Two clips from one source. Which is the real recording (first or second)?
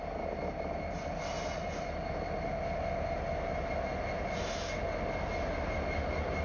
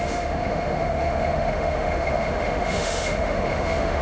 first